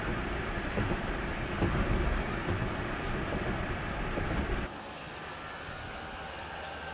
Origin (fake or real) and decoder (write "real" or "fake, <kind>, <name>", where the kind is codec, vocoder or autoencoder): fake, vocoder, BigVGAN v2